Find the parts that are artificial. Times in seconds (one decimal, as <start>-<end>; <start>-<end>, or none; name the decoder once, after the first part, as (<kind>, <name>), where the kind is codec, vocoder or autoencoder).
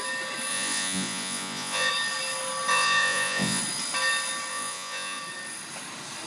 0.5-1.9 (vocoder, Vocos); 2.7-3.6; 4.5-5.2